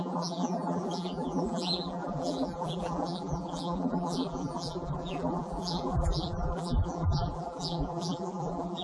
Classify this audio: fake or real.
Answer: fake